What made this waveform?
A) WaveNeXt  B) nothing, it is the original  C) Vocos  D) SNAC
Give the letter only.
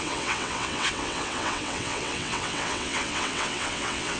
A